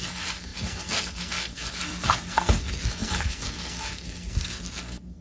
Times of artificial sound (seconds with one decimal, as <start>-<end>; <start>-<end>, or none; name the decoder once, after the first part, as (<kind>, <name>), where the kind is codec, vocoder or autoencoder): 0.0-5.2 (codec, SNAC)